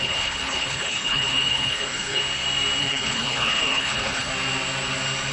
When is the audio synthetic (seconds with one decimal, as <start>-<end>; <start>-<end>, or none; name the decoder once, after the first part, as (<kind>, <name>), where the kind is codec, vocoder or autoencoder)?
0.0-2.2 (codec, HILCodec); 2.8-4.3